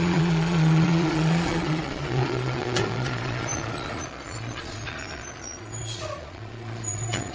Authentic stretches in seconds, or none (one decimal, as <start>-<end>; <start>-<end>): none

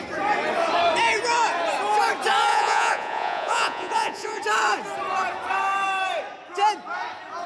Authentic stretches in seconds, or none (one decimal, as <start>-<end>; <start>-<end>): 0.0-2.5; 4.4-7.5

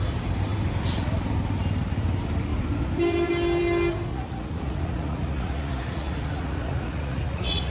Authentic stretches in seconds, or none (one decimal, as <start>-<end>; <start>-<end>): 0.0-4.1